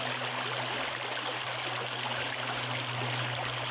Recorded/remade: recorded